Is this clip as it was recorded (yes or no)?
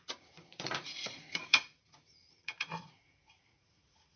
no